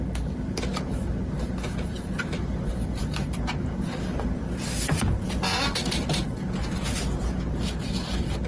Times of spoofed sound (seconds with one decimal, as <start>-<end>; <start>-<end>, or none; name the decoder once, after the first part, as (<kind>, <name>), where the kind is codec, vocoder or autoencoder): none